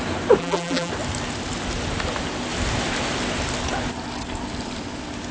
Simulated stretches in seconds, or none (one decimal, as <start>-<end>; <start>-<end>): 0.4-0.9